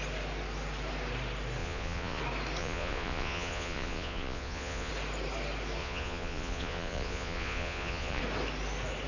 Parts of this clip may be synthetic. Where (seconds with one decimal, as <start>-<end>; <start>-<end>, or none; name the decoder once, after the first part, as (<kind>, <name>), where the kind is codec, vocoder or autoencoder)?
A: 1.6-2.2 (vocoder, Vocos); 2.6-4.9; 5.8-8.2